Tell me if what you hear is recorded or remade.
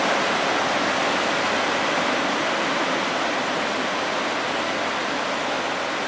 recorded